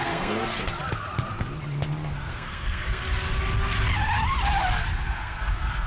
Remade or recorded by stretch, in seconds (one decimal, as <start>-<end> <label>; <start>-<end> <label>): 0.0-0.4 remade; 0.4-2.1 recorded; 2.1-3.0 remade; 3.0-5.2 recorded; 5.2-5.9 remade